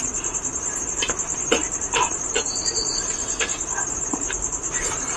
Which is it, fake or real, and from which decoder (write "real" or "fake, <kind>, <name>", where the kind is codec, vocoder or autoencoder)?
fake, vocoder, BigVGAN v2